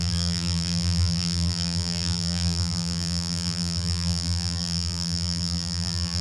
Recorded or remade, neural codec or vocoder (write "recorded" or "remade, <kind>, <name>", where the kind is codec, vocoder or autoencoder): remade, vocoder, BigVGAN v2